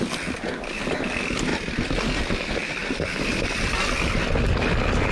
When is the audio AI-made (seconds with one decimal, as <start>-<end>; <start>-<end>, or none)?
1.5-2.2